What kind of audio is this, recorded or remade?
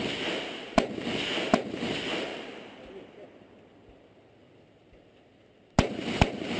recorded